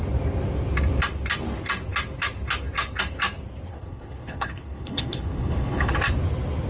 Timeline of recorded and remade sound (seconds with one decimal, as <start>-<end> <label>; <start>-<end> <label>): 0.0-3.7 recorded; 3.7-5.9 remade; 5.9-6.7 recorded